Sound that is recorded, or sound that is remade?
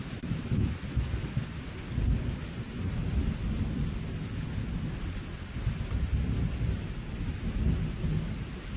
recorded